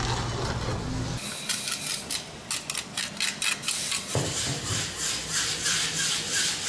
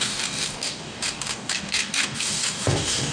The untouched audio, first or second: first